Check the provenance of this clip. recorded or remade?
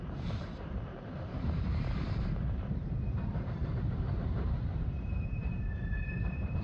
remade